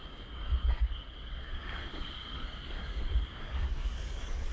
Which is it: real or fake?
fake